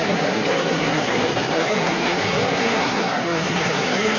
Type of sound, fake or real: fake